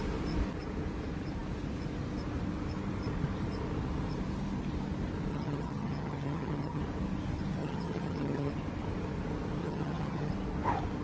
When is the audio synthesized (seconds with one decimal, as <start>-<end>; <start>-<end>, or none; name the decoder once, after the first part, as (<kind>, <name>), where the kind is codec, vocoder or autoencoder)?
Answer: 5.3-6.8 (vocoder, HiFi-GAN); 7.6-8.5; 9.6-10.3